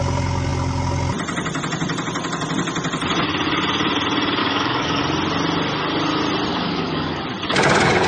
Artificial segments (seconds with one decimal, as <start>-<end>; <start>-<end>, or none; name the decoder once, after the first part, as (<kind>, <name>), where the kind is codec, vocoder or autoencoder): 4.4-5.0 (codec, DAC); 6.5-7.2